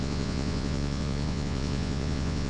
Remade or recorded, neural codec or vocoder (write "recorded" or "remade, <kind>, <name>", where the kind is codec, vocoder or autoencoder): remade, vocoder, Vocos